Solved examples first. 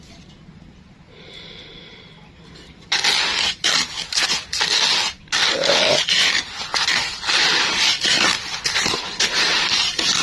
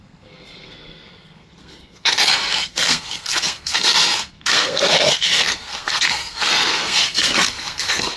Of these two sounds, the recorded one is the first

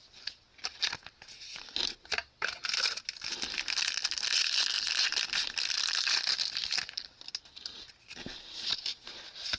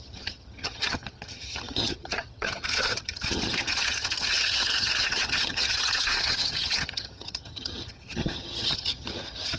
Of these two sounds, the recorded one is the first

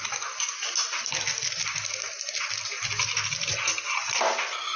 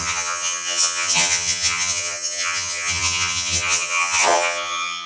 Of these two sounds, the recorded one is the first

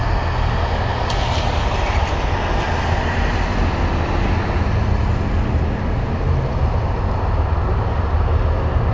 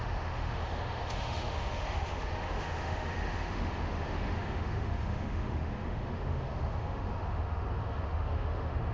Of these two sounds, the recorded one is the first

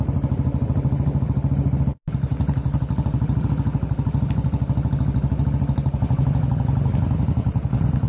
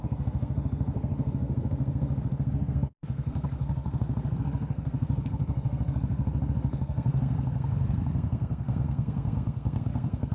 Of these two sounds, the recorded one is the first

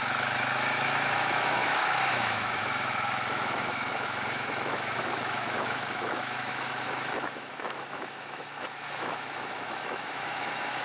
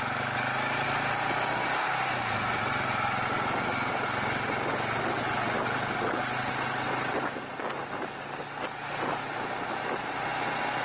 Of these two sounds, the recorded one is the second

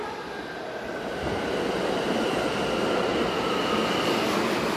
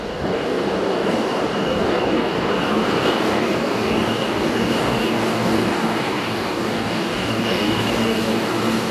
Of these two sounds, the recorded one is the first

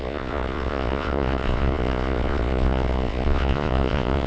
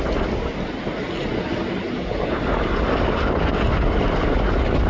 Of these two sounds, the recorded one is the second